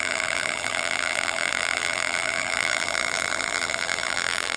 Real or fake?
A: fake